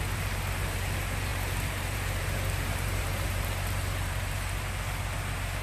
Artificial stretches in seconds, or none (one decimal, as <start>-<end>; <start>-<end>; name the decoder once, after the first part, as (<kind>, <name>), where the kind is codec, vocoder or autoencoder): 1.3-4.7 (vocoder, BigVGAN v2)